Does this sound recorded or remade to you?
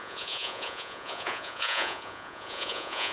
remade